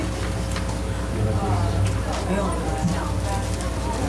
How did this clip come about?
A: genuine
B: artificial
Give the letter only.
A